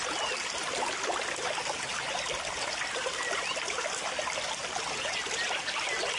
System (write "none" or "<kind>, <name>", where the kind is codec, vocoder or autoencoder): none